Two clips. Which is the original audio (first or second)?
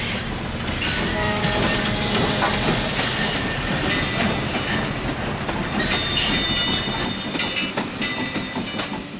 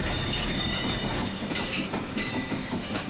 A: first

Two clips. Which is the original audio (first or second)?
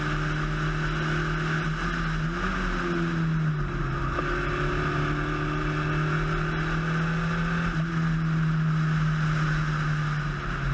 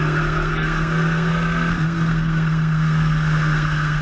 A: first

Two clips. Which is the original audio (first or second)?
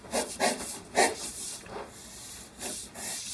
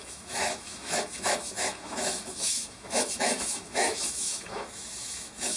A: first